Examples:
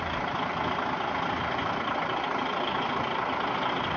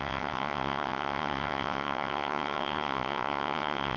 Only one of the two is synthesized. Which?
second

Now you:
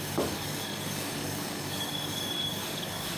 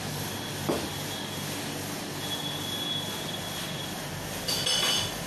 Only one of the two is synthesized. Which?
first